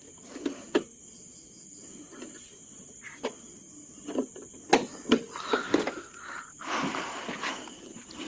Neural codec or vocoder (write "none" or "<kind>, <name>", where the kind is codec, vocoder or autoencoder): none